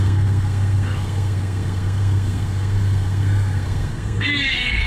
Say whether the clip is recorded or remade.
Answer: remade